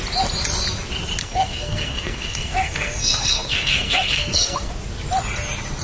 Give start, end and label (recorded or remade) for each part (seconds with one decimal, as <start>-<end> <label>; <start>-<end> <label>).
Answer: 0.0-1.2 recorded; 1.2-4.7 remade; 4.7-5.8 recorded